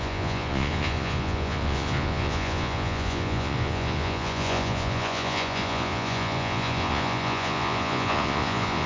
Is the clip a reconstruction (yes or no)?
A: yes